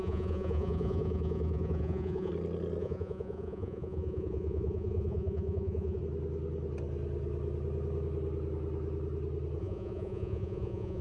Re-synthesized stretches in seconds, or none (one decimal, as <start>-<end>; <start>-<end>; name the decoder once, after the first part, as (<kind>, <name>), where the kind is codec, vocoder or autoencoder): 0.0-2.3 (vocoder, Vocos); 2.8-6.0; 9.6-11.0